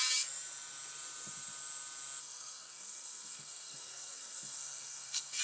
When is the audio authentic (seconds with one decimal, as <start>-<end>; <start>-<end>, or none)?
0.0-2.2